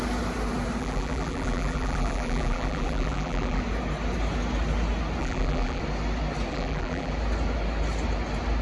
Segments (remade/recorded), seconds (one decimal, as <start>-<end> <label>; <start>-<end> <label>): 0.0-0.8 recorded; 0.8-3.6 remade; 3.6-5.2 recorded; 5.2-5.8 remade; 5.8-6.5 recorded; 6.5-7.1 remade; 7.1-8.6 recorded